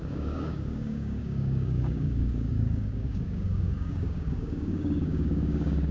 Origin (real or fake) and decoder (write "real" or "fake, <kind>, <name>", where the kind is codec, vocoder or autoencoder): fake, codec, DAC